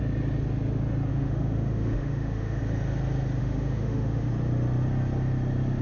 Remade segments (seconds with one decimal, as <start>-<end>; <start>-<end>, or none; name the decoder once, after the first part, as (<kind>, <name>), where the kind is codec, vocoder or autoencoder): 1.1-2.6 (autoencoder, DAC-VAE); 3.4-4.3